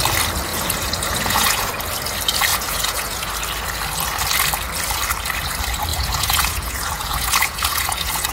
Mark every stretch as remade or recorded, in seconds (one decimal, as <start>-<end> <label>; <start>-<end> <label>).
0.0-0.5 recorded; 0.5-1.7 remade; 1.7-2.5 recorded; 2.5-3.3 remade; 3.3-5.9 recorded; 5.9-8.3 remade